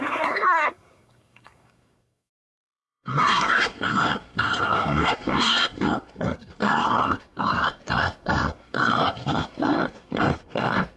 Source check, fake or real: fake